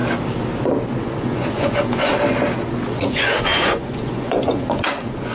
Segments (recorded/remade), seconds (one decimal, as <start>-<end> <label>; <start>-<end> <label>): 0.0-1.0 recorded; 1.0-2.1 remade; 2.1-2.9 recorded; 2.9-5.3 remade